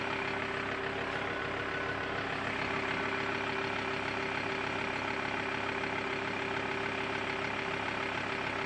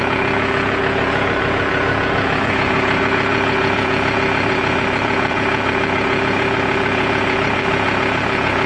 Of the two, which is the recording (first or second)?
first